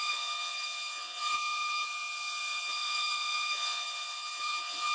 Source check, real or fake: fake